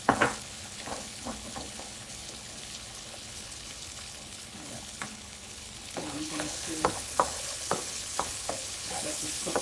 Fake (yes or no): yes